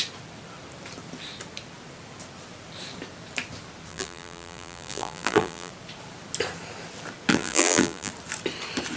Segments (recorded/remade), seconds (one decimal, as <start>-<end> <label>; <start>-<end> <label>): 0.0-3.9 recorded; 3.9-5.7 remade; 5.7-7.3 recorded; 7.3-8.1 remade; 8.1-9.0 recorded